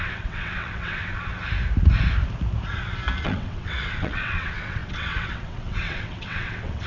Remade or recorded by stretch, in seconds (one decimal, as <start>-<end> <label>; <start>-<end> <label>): 0.0-1.3 remade; 1.3-3.2 recorded; 3.2-6.9 remade